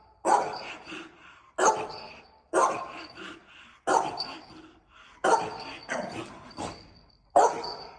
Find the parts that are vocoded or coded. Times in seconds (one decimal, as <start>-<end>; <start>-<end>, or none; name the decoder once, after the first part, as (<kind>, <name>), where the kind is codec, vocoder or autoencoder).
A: none

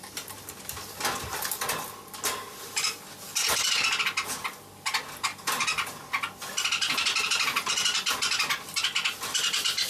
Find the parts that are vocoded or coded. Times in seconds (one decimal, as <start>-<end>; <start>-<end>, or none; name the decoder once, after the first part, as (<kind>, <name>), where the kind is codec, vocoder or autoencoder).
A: none

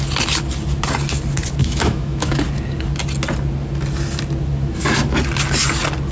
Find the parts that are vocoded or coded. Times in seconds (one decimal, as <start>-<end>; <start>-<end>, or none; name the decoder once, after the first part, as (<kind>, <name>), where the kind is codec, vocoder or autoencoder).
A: 1.6-2.4 (autoencoder, DAC-VAE)

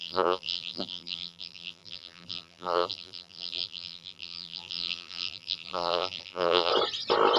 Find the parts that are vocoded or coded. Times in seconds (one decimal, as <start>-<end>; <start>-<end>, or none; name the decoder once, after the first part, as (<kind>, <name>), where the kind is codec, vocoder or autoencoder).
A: 0.0-6.7 (vocoder, BigVGAN v2)

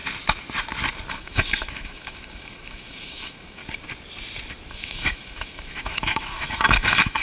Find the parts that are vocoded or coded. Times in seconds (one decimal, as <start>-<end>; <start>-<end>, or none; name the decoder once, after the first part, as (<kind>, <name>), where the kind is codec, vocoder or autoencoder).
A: 1.1-3.6 (autoencoder, DAC-VAE); 4.7-7.2